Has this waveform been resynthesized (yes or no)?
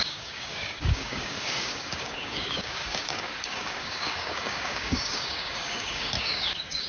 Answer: yes